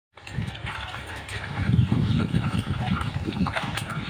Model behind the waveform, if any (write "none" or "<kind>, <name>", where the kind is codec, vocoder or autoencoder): codec, DAC